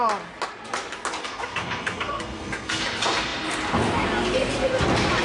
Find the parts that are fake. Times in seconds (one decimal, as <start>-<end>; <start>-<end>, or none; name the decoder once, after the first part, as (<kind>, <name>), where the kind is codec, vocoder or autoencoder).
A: 1.2-2.8 (codec, SNAC)